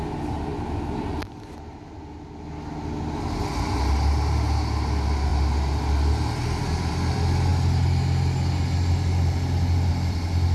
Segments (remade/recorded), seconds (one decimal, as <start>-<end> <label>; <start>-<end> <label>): 0.0-10.5 recorded